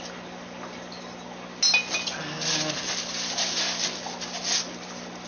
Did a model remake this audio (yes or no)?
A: no